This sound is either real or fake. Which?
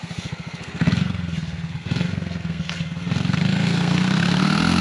fake